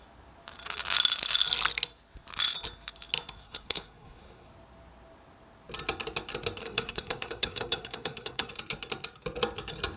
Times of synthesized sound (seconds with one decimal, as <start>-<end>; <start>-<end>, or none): 3.4-4.5; 6.6-8.5

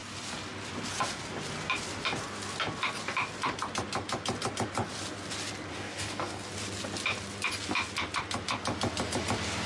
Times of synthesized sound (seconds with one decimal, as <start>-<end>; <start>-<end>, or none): 5.7-6.5